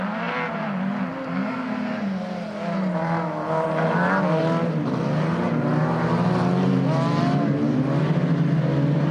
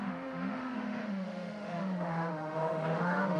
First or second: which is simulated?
second